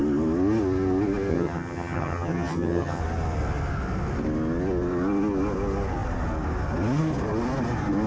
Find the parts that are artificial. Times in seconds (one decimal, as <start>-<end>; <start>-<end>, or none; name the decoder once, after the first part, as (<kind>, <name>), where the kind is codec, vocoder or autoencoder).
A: 1.3-3.0 (vocoder, HiFi-GAN)